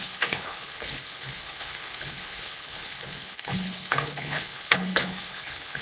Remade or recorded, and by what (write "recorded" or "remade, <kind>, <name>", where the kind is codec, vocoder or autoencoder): remade, codec, HILCodec